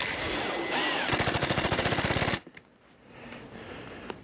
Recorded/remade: recorded